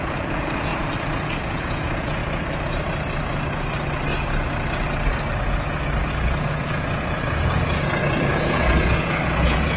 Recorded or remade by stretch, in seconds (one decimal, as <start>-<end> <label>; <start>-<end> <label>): 0.0-0.7 remade; 0.7-1.4 recorded; 1.4-2.2 remade; 2.2-6.0 recorded; 6.0-9.8 remade